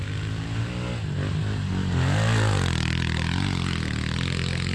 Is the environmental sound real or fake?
real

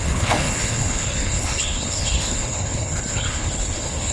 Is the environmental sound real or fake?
fake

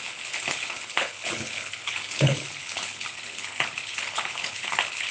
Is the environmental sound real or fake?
fake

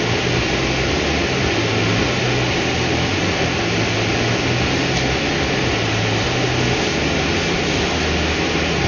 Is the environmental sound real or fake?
real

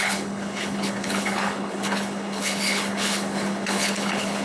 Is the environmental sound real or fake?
fake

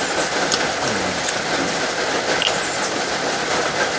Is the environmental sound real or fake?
real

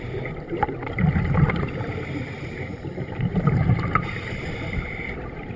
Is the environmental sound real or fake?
real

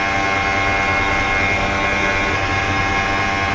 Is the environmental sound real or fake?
real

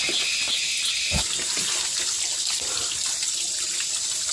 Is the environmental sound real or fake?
real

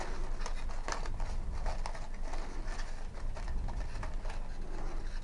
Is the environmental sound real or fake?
real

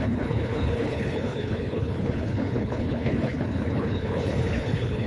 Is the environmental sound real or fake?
fake